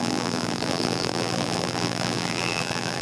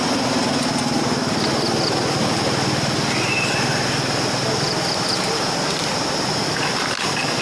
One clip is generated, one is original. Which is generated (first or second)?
first